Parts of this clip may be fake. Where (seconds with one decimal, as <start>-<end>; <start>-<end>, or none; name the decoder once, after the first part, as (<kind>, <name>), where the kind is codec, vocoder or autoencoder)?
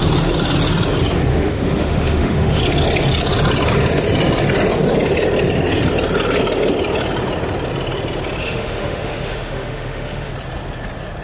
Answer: 1.3-2.6 (autoencoder, DAC-VAE); 8.4-10.3